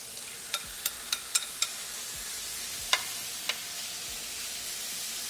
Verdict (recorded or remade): recorded